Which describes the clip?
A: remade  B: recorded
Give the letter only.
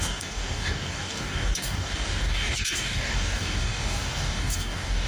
A